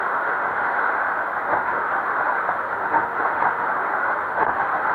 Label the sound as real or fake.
fake